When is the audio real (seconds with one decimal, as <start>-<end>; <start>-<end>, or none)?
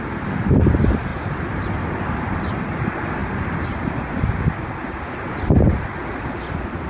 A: 0.0-6.9